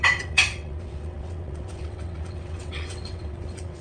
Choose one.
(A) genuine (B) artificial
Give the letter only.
B